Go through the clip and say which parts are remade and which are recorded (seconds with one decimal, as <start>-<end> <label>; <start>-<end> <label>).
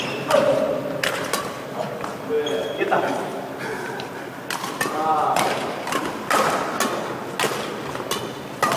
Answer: 0.0-0.8 remade; 0.8-4.8 recorded; 4.8-6.0 remade; 6.0-8.8 recorded